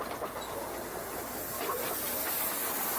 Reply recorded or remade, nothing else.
recorded